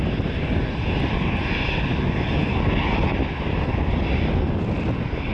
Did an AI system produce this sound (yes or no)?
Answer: no